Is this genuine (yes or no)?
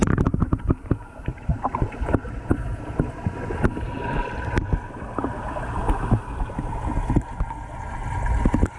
yes